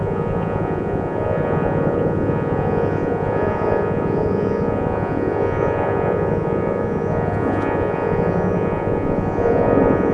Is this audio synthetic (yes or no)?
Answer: yes